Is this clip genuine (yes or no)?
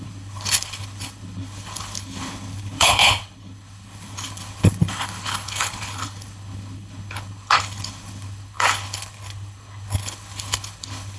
no